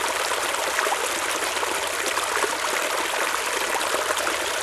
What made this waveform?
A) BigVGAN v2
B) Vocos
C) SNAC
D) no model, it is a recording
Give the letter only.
D